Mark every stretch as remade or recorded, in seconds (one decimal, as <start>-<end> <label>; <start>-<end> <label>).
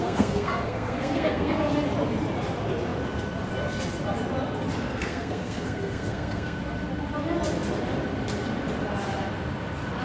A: 0.0-1.7 remade; 1.7-4.9 recorded; 4.9-6.6 remade; 6.6-10.0 recorded